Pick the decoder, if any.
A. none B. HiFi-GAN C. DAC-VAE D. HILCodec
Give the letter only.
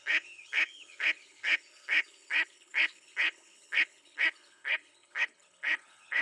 D